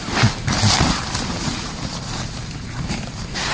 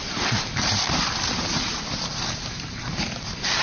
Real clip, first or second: first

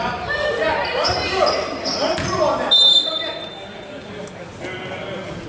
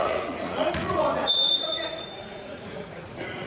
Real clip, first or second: first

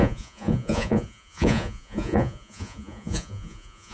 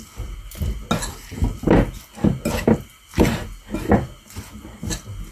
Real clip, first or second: second